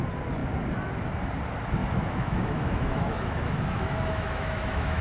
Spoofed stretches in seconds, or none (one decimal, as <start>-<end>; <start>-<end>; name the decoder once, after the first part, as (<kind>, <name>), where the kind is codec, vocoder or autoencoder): 1.8-5.0 (autoencoder, DAC-VAE)